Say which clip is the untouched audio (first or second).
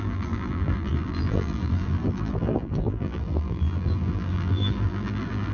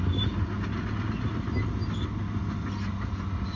second